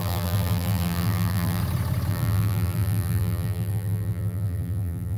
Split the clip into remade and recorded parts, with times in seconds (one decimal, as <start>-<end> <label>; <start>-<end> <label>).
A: 0.0-1.6 remade; 1.6-2.1 recorded; 2.1-5.2 remade